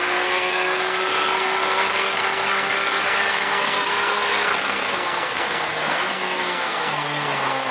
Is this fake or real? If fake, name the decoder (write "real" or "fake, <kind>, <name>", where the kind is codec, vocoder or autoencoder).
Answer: fake, codec, SNAC